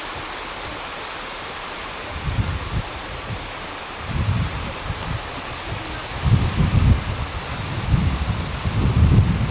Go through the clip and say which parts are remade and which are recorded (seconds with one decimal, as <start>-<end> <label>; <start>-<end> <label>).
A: 0.0-1.3 recorded; 1.3-5.7 remade; 5.7-9.5 recorded